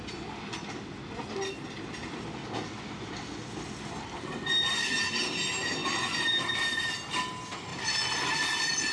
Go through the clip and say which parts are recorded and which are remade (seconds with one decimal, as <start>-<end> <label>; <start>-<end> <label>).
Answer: 0.0-5.8 recorded; 5.8-6.9 remade; 6.9-7.7 recorded; 7.7-8.9 remade